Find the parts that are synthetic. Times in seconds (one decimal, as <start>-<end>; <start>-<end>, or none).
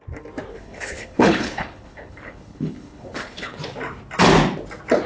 0.5-3.6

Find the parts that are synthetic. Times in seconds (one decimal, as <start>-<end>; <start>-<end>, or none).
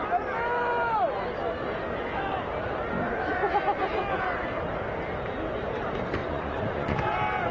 6.2-7.0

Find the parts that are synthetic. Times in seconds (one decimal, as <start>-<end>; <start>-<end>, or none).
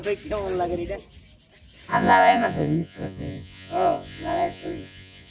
1.9-5.3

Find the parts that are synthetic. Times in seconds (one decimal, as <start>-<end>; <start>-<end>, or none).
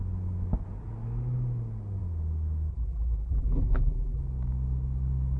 2.7-4.2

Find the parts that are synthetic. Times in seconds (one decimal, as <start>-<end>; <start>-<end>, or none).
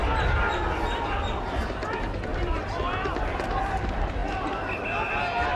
none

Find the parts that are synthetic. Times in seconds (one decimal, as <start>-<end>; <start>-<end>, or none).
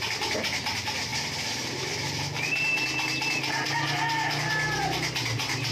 none